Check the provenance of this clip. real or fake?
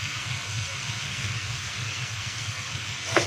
fake